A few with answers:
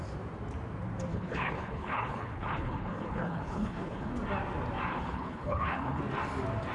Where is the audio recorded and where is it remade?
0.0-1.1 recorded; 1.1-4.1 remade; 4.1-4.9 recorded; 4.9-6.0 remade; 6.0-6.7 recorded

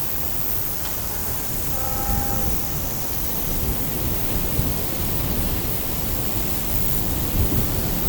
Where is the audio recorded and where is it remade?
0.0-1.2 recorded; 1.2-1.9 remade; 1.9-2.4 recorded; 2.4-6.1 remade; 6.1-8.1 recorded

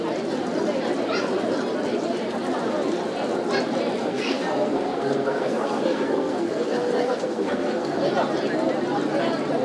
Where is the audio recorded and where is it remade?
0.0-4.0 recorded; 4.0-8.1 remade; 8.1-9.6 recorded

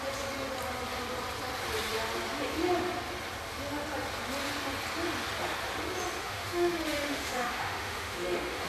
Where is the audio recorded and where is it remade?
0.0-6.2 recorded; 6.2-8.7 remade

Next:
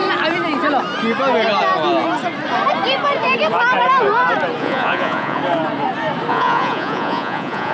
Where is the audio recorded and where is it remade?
0.0-4.6 recorded; 4.6-5.4 remade; 5.4-6.3 recorded; 6.3-7.7 remade

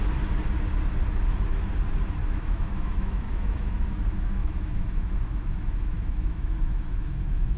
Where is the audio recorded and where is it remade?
0.0-2.2 recorded; 2.2-3.7 remade; 3.7-4.4 recorded; 4.4-7.6 remade